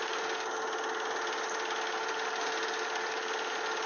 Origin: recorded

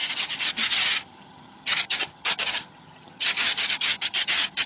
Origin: remade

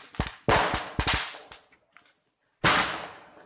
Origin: recorded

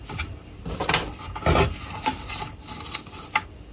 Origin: recorded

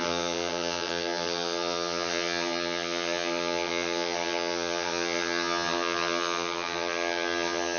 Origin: remade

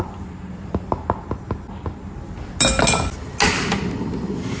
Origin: recorded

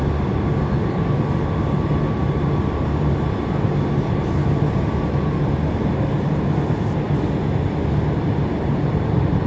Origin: recorded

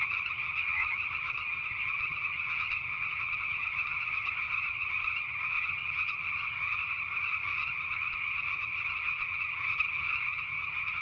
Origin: remade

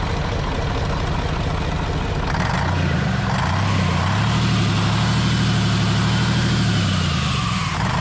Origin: recorded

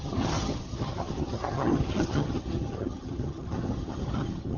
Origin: remade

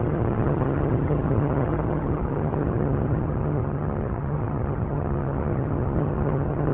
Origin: remade